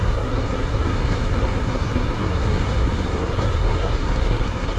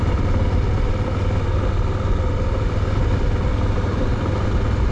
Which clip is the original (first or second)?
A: second